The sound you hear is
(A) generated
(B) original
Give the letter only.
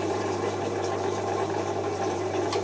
A